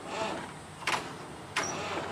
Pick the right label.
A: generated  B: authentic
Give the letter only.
B